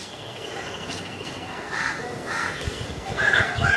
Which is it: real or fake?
fake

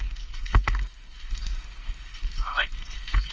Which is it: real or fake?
fake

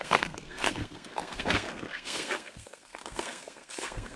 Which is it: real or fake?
fake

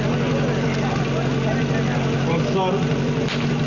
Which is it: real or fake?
real